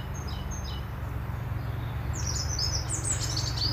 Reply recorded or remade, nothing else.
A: recorded